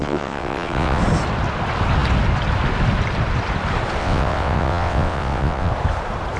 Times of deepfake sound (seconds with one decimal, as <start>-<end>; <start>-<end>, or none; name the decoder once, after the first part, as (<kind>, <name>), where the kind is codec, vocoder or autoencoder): 0.0-1.0 (vocoder, WaveNeXt); 4.0-5.7